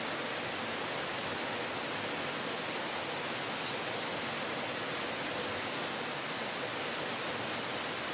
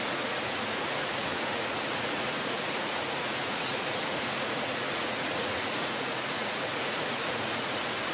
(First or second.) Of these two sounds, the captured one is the first